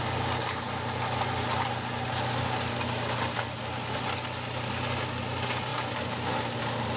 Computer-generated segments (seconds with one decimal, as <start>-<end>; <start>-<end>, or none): none